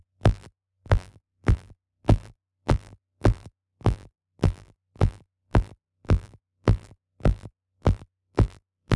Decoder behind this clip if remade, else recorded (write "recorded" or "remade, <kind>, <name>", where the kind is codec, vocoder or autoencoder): remade, vocoder, BigVGAN v2